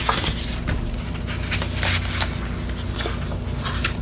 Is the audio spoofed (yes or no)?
no